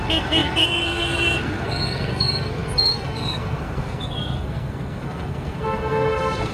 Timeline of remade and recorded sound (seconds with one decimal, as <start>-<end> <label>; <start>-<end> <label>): 0.0-6.5 remade